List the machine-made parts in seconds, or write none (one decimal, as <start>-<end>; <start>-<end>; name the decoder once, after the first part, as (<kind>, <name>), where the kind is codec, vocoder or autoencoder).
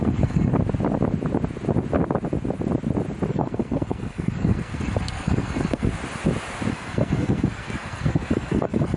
0.0-0.5 (codec, SNAC); 3.3-5.9; 6.7-9.0